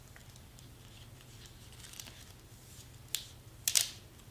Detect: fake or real real